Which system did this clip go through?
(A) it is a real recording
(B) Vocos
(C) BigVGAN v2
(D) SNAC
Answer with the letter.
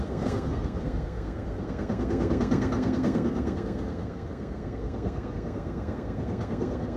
D